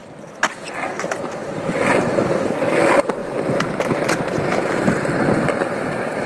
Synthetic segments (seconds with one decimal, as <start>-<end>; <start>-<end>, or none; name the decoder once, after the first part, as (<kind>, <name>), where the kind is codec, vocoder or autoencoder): 3.2-5.1 (vocoder, BigVGAN v2)